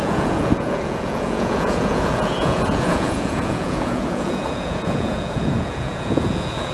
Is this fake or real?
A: fake